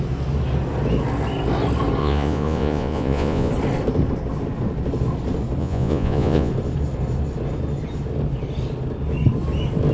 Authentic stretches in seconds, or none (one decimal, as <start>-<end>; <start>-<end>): 0.0-2.0; 3.5-5.6; 6.5-9.9